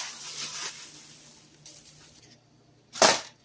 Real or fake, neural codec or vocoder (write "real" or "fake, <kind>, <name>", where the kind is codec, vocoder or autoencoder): fake, vocoder, BigVGAN v2